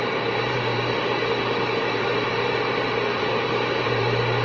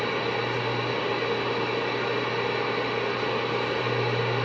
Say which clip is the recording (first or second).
second